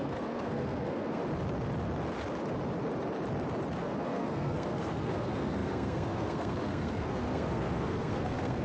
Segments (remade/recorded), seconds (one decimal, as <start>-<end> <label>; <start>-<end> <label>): 0.0-1.2 remade; 1.2-3.8 recorded; 3.8-8.6 remade

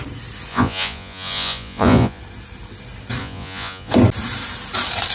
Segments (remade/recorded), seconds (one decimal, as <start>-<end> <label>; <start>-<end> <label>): 0.0-0.5 recorded; 0.5-2.2 remade; 2.2-3.2 recorded; 3.2-3.9 remade; 3.9-5.1 recorded

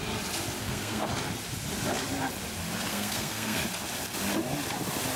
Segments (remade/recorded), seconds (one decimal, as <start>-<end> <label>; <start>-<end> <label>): 0.0-0.6 recorded; 0.6-1.1 remade; 1.1-2.9 recorded; 2.9-3.6 remade; 3.6-5.2 recorded

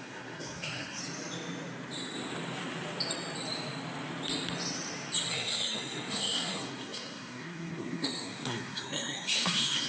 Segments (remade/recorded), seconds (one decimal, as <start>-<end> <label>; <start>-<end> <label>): 0.0-1.0 remade; 1.0-5.3 recorded; 5.3-9.9 remade

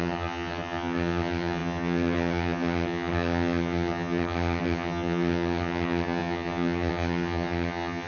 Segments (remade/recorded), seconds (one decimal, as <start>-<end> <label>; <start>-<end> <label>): 0.0-8.1 remade

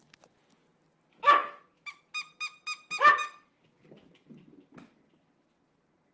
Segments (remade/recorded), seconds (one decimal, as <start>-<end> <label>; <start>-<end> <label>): 0.0-6.1 recorded

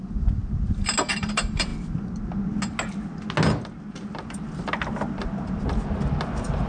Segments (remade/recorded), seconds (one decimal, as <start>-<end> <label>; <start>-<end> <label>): 0.0-6.7 recorded